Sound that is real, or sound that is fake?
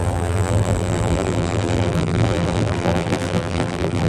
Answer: fake